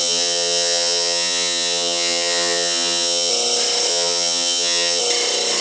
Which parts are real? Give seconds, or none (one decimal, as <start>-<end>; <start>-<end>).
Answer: 3.3-3.9; 5.0-5.6